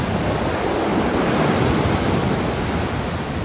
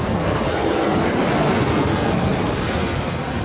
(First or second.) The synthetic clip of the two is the second